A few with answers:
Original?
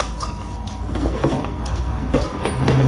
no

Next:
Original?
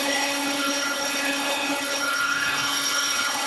no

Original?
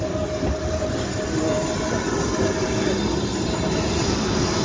yes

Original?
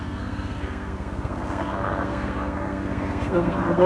no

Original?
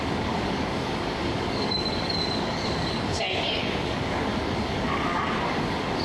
no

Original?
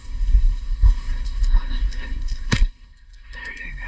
no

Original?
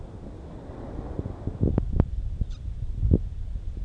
yes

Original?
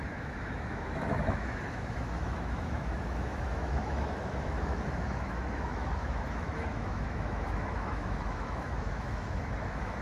no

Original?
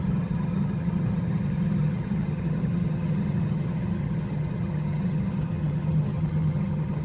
no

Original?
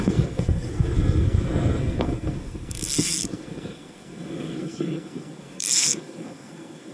no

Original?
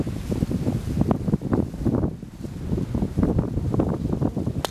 yes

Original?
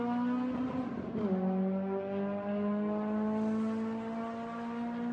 yes